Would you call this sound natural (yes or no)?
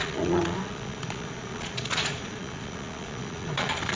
no